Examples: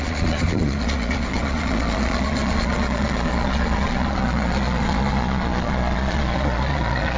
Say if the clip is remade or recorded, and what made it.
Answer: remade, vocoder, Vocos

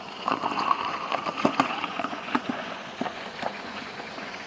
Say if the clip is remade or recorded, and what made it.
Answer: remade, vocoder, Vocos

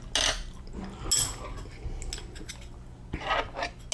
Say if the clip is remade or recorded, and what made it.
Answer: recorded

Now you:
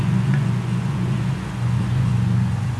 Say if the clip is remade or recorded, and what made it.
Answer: remade, vocoder, Vocos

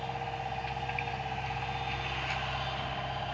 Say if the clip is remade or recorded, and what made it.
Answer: recorded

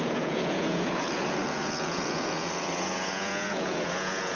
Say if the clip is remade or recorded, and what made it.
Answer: remade, vocoder, Vocos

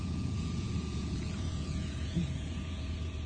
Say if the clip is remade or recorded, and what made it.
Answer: remade, vocoder, Vocos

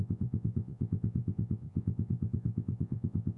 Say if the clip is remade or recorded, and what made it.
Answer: remade, vocoder, Vocos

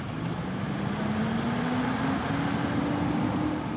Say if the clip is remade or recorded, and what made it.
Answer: recorded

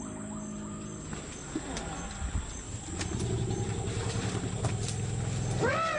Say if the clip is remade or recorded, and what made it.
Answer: recorded